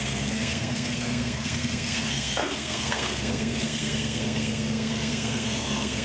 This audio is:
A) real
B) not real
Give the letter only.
B